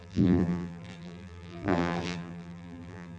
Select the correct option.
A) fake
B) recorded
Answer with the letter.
A